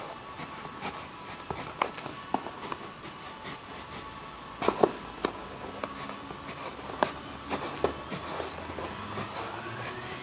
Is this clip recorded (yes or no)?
yes